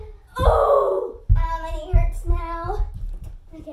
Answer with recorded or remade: recorded